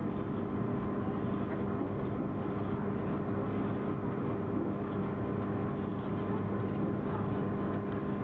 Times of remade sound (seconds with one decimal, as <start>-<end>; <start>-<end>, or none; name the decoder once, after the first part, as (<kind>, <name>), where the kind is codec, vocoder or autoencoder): none